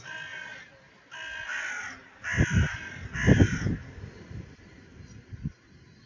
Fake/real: real